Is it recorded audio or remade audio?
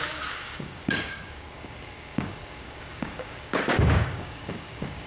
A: remade